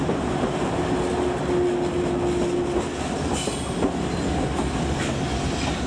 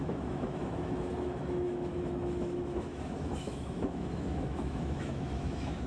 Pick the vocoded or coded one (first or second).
second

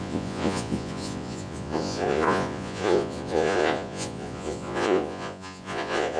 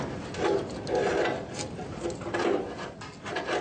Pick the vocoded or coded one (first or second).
first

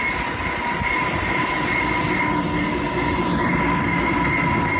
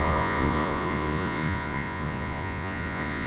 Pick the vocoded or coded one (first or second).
second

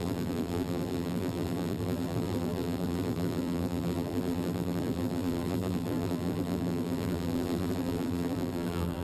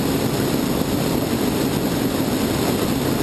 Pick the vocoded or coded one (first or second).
first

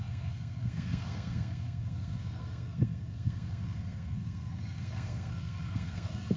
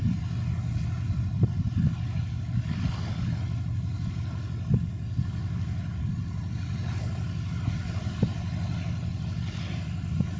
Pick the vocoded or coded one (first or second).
first